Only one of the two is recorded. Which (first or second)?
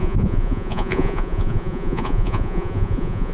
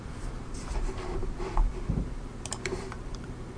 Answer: second